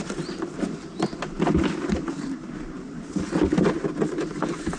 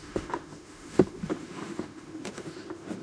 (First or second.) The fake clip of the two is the second